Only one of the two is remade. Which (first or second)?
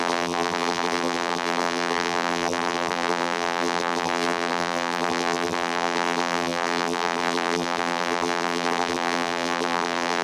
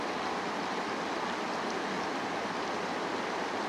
first